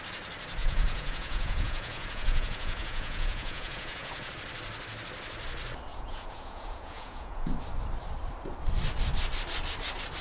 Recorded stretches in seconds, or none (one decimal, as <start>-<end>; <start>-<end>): 0.0-0.6; 4.3-5.9; 7.5-10.2